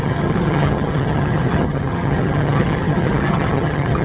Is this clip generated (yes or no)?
yes